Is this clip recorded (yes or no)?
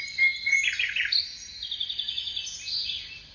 yes